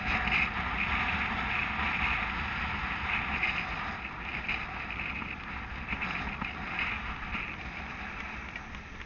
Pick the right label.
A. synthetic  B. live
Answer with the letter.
B